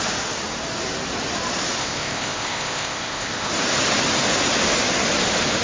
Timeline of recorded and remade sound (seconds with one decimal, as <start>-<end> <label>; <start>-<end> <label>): 0.0-1.8 recorded; 1.8-3.5 remade; 3.5-5.6 recorded